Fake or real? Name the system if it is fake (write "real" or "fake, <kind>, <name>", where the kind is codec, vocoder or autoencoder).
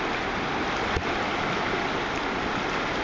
real